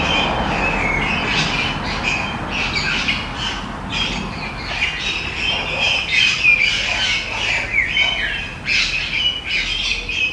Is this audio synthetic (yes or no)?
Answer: no